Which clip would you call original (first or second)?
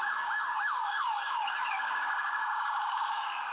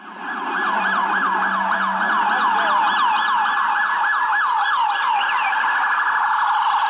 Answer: second